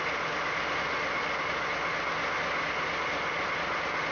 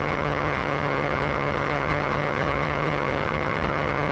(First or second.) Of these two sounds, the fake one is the second